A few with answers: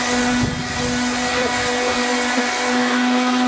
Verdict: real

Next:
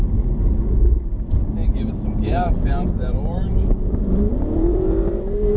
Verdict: fake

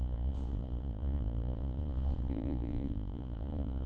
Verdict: fake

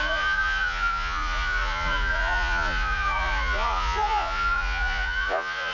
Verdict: fake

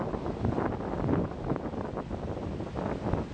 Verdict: real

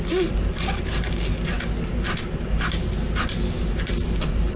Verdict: real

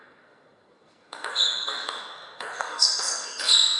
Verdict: fake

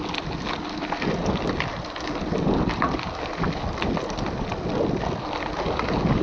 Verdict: real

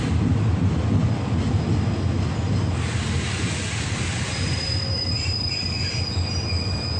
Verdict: real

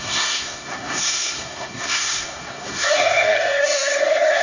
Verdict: fake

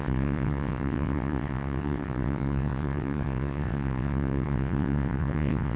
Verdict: fake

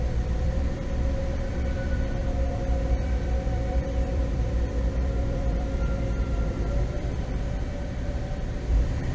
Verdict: fake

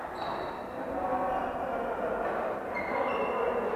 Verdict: real